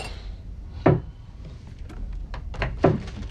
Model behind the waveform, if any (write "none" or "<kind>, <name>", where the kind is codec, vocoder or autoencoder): vocoder, BigVGAN v2